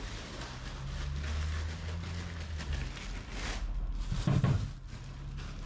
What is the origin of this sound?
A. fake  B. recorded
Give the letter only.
B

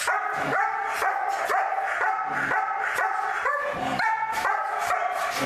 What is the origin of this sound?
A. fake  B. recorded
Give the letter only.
B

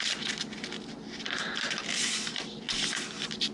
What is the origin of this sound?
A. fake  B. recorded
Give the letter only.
B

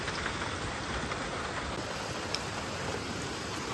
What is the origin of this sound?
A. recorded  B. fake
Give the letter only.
A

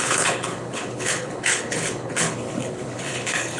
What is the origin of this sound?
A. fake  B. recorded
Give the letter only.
A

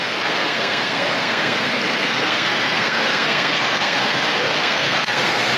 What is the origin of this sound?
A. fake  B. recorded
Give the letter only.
A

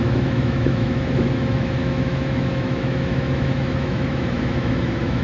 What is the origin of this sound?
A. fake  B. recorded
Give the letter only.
A